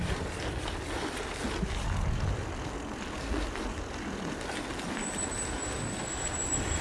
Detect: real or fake real